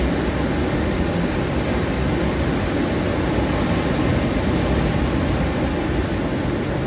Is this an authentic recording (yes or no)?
yes